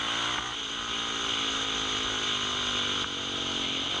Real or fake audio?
real